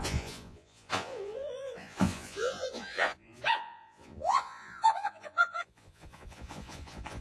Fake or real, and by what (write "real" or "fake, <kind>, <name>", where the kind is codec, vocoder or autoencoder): fake, vocoder, Vocos